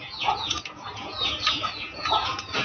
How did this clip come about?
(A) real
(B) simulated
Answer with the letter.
B